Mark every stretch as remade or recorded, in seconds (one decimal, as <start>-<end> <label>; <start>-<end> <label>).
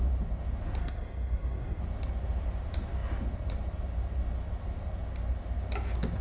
0.0-0.8 recorded; 0.8-1.8 remade; 1.8-6.2 recorded